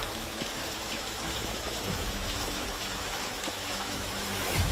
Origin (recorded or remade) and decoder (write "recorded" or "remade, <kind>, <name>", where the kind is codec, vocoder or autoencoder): remade, autoencoder, DAC-VAE